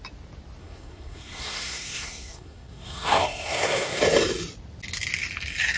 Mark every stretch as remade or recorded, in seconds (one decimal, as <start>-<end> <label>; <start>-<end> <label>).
0.0-0.6 recorded; 0.6-4.0 remade; 4.0-5.8 recorded